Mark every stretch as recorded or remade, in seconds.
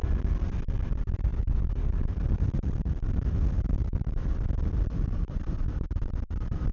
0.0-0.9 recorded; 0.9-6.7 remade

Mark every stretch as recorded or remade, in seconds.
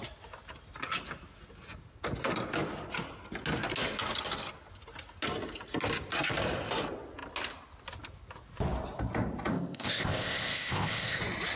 0.0-9.5 recorded; 9.5-11.2 remade; 11.2-11.6 recorded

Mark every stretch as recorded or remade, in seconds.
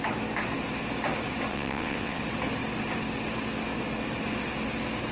0.0-1.5 recorded; 1.5-2.2 remade; 2.2-5.1 recorded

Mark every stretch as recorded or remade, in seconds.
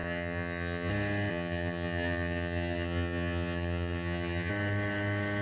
0.0-0.9 remade; 0.9-1.3 recorded; 1.3-4.5 remade; 4.5-5.4 recorded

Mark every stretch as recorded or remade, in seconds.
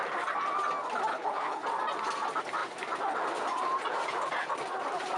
0.0-1.1 recorded; 1.1-1.6 remade; 1.6-5.2 recorded